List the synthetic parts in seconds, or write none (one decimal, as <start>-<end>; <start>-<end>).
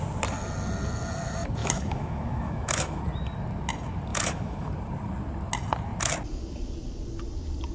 1.6-3.0; 4.1-4.7